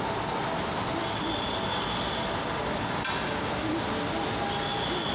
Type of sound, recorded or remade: recorded